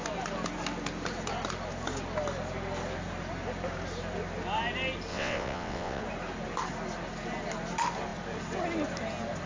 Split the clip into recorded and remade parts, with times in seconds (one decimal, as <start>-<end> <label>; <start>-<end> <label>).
0.0-5.1 recorded; 5.1-6.0 remade; 6.0-9.5 recorded